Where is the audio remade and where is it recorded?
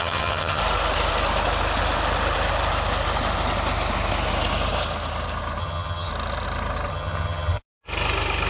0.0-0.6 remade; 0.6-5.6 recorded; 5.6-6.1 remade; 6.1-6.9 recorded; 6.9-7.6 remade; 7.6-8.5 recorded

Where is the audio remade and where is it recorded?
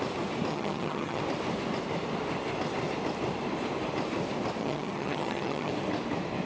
0.0-0.5 recorded; 0.5-1.2 remade; 1.2-4.6 recorded; 4.6-5.7 remade; 5.7-6.5 recorded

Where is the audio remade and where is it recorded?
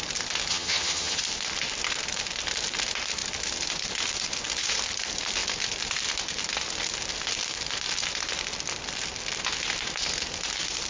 0.0-0.5 recorded; 0.5-1.2 remade; 1.2-10.9 recorded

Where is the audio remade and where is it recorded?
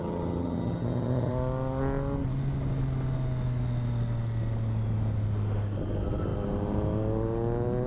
0.0-1.3 remade; 1.3-7.9 recorded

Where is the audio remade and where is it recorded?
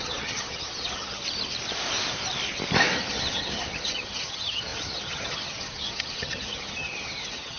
0.0-1.2 remade; 1.2-3.1 recorded; 3.1-7.6 remade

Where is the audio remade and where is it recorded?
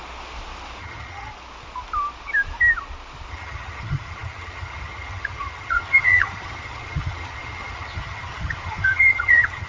0.0-0.8 recorded; 0.8-1.3 remade; 1.3-3.3 recorded; 3.3-9.7 remade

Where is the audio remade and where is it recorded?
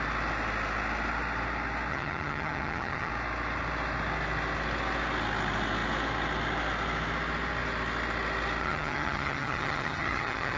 0.0-1.9 recorded; 1.9-3.1 remade; 3.1-8.6 recorded; 8.6-10.6 remade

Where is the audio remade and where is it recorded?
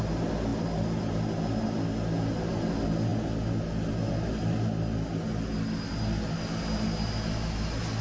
0.0-8.0 recorded